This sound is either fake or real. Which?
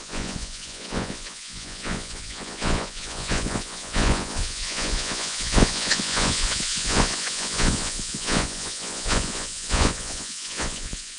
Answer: fake